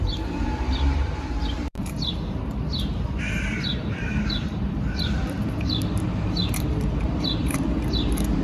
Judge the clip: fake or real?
fake